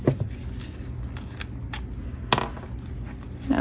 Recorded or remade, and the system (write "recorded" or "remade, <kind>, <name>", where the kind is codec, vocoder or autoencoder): recorded